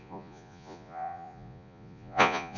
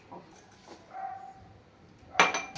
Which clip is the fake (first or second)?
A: first